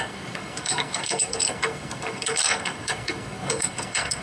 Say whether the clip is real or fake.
fake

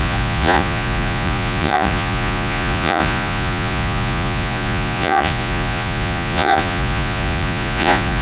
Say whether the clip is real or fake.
fake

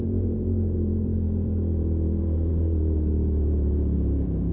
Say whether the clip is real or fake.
fake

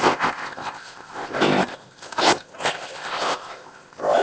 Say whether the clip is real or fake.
fake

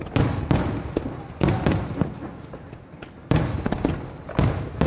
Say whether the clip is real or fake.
real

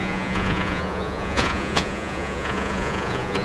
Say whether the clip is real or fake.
fake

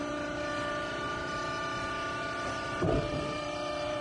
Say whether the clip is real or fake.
fake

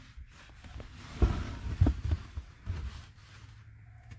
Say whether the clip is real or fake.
real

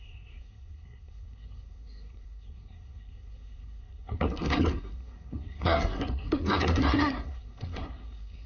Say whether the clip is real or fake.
fake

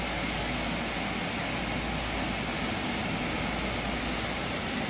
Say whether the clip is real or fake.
real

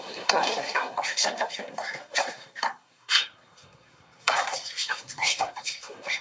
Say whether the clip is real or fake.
fake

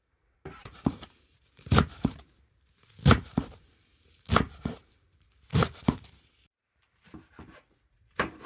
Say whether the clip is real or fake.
fake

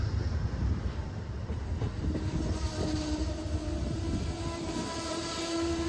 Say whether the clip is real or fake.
real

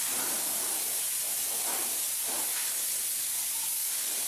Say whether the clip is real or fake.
real